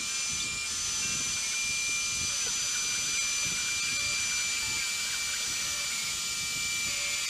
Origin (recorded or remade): recorded